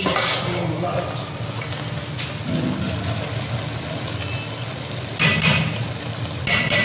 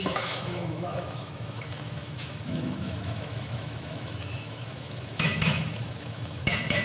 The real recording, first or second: first